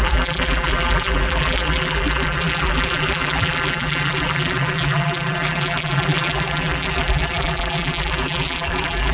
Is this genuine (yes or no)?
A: no